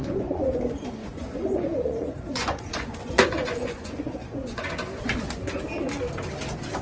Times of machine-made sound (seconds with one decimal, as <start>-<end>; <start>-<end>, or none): 0.0-0.6; 1.0-4.7